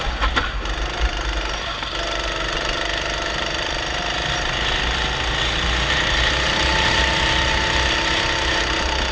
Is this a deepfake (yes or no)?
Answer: no